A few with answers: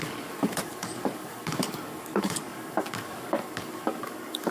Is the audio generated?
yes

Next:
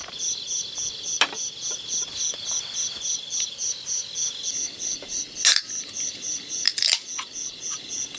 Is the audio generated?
no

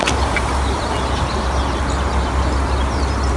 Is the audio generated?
no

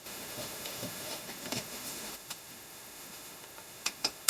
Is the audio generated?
yes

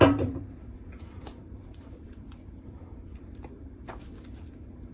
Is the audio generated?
yes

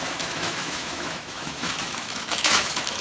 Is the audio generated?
yes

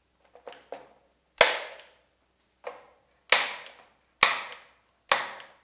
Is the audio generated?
no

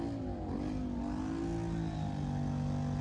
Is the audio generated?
no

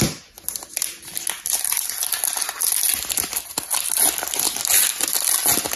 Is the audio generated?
no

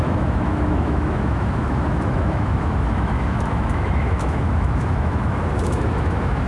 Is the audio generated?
yes